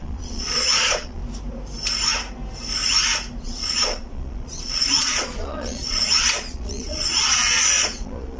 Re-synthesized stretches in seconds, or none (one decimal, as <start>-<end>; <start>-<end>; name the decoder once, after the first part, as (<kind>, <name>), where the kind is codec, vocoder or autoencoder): 0.0-1.2 (vocoder, Vocos); 3.4-8.4